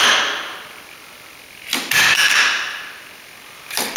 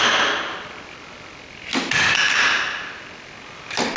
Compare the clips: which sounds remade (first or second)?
first